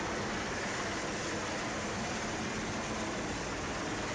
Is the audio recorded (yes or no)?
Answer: yes